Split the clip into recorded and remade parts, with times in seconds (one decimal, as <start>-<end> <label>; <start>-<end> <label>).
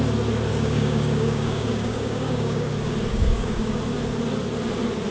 0.0-0.5 recorded; 0.5-2.7 remade; 2.7-3.1 recorded; 3.1-3.8 remade; 3.8-5.1 recorded